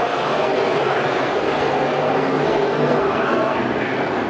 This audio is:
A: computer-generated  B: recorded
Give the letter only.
A